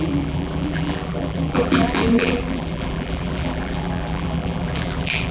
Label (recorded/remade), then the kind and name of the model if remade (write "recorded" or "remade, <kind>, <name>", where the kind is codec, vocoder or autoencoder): remade, vocoder, BigVGAN v2